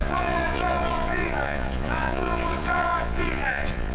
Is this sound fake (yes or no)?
yes